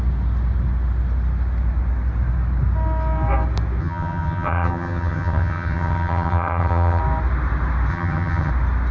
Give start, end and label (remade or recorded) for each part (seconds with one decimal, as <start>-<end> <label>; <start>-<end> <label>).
0.0-3.8 recorded; 3.8-7.0 remade; 7.0-7.9 recorded; 7.9-8.5 remade; 8.5-8.9 recorded